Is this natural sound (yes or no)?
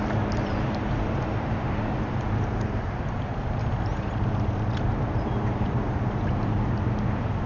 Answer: no